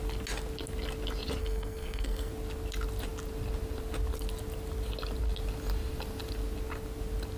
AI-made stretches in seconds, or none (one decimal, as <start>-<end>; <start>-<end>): 1.4-2.3